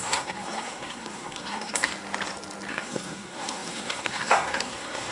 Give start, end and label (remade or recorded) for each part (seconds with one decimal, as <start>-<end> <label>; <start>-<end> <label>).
0.0-1.9 remade; 1.9-2.7 recorded; 2.7-5.1 remade